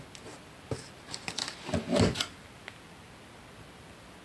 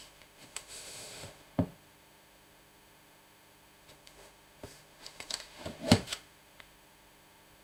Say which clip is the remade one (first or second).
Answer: second